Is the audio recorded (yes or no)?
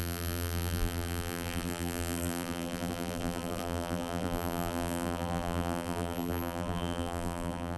no